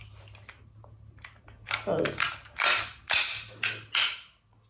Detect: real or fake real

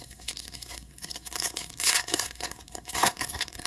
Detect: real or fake fake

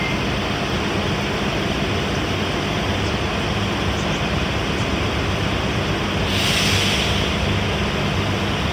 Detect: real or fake real